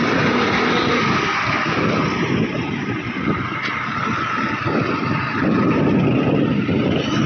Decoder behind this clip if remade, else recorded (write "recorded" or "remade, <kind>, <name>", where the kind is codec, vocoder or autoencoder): recorded